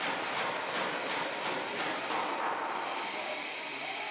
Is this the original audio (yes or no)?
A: yes